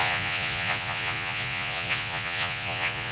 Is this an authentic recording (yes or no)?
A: no